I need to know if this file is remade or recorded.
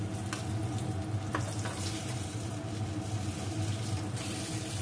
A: recorded